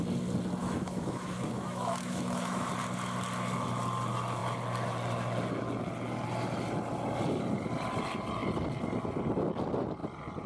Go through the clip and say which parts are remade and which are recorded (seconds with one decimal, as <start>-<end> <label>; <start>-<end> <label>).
0.0-0.6 recorded; 0.6-2.7 remade; 2.7-10.5 recorded